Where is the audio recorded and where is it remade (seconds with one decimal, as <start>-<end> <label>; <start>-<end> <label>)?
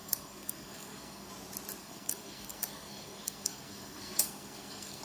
0.0-1.3 remade; 1.3-1.8 recorded; 1.8-5.0 remade